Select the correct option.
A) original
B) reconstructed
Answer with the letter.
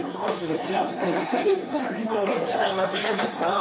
B